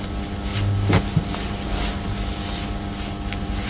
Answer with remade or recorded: recorded